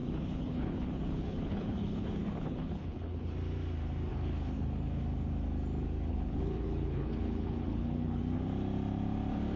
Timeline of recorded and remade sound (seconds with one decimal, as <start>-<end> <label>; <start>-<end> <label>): 0.0-3.3 remade; 3.3-4.1 recorded; 4.1-5.0 remade; 5.0-6.1 recorded; 6.1-8.2 remade; 8.2-9.6 recorded